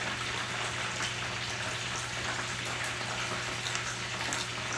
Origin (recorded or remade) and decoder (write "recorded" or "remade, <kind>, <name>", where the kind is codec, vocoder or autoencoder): recorded